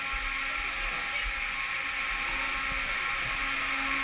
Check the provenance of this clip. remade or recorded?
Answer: recorded